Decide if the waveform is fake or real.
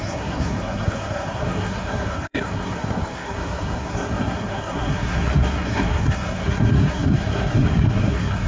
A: fake